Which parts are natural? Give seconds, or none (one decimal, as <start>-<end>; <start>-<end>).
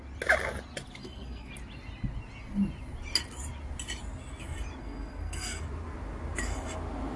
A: 0.0-1.0; 1.5-4.8; 5.6-7.2